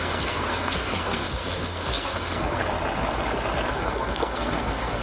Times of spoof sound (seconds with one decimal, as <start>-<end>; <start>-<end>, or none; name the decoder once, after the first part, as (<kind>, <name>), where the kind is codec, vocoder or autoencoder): 0.0-2.6 (codec, SNAC); 3.7-5.0